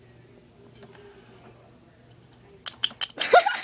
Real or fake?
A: real